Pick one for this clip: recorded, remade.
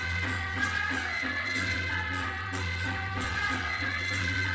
remade